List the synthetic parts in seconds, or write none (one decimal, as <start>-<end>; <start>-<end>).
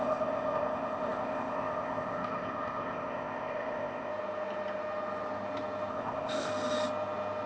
0.0-4.1; 5.9-6.5